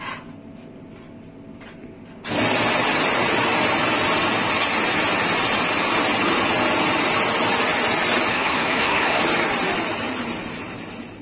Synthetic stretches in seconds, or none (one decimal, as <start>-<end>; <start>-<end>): 8.3-9.2